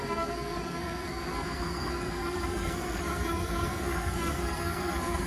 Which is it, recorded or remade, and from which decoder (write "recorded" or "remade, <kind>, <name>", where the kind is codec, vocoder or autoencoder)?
remade, codec, SNAC